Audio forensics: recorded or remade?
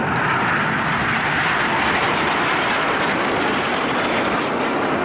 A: recorded